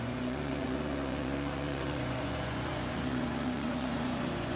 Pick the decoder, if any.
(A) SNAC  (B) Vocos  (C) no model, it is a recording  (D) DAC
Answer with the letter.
B